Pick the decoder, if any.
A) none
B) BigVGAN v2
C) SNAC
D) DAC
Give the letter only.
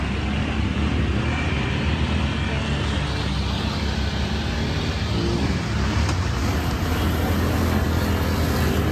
A